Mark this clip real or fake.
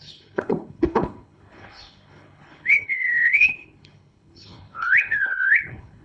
fake